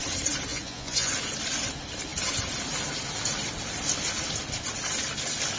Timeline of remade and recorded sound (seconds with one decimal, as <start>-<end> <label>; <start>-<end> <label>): 0.0-0.5 recorded; 0.5-1.1 remade; 1.1-5.6 recorded